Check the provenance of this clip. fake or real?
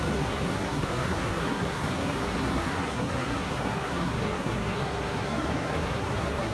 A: fake